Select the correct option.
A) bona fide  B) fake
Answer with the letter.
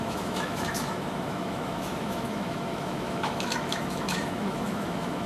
B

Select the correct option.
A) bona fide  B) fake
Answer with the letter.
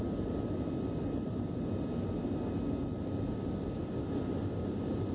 A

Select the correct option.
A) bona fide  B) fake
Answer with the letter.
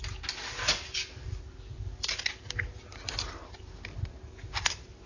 A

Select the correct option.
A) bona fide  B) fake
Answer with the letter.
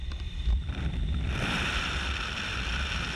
B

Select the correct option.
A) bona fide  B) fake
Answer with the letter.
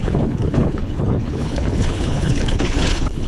B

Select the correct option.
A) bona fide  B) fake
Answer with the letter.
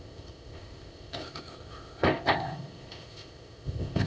B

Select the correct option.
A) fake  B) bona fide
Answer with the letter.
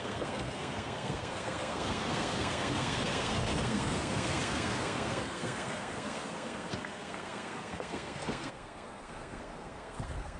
A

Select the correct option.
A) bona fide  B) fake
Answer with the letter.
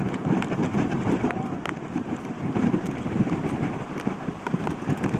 B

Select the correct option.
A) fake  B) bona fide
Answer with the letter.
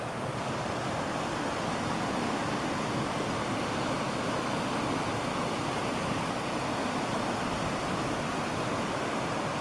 B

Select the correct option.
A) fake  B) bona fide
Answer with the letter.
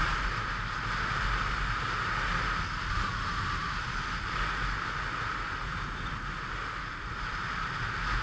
B